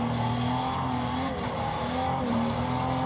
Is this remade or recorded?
recorded